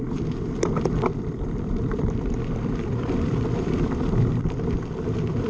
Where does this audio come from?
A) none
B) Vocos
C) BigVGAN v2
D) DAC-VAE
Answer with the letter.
C